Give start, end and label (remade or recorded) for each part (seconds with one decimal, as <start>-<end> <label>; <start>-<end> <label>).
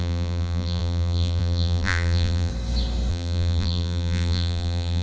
0.0-2.5 remade; 2.5-3.1 recorded; 3.1-5.0 remade